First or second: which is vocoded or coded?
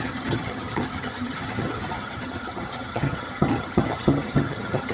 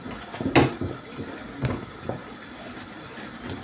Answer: first